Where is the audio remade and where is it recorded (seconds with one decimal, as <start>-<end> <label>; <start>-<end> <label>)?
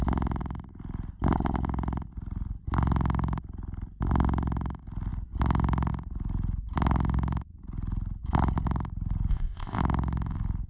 0.0-9.3 recorded; 9.3-9.8 remade; 9.8-10.7 recorded